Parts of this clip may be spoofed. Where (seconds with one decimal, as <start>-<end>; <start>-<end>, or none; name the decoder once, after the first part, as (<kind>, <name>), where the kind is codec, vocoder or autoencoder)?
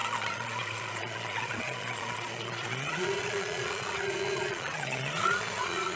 0.0-6.0 (vocoder, Vocos)